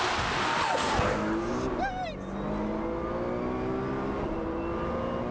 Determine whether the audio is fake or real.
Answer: real